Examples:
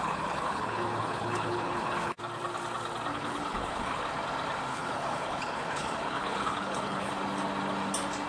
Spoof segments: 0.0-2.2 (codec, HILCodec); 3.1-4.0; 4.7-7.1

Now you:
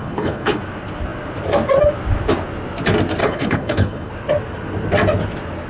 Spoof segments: 0.0-0.6 (codec, HILCodec); 3.2-4.1

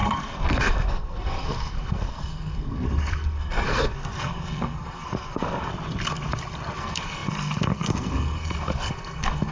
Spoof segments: 0.0-5.7 (codec, SNAC); 6.8-9.5

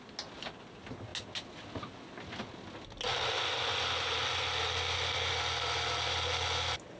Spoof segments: none